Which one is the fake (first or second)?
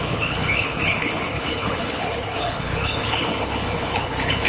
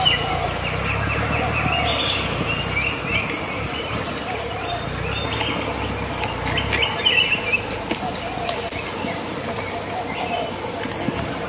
first